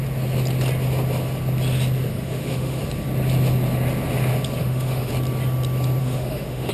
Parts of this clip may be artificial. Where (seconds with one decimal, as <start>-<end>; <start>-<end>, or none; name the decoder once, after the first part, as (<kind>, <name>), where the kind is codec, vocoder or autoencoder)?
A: 2.1-2.8 (autoencoder, DAC-VAE); 4.6-5.1; 6.0-6.7